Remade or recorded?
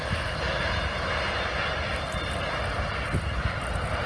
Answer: recorded